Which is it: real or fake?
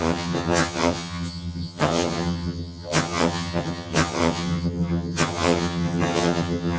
fake